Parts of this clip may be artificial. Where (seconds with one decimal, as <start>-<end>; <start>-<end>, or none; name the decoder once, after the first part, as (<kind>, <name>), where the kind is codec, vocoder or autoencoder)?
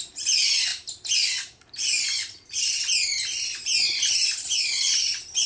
none